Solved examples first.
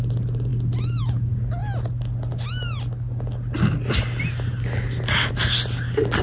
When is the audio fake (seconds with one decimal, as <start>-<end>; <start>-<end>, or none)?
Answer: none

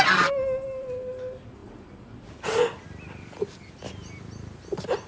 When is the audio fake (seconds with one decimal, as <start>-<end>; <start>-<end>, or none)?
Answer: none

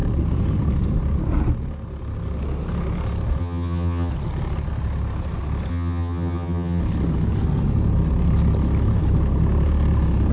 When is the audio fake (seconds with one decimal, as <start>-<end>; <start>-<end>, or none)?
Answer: 3.4-4.1; 5.7-6.8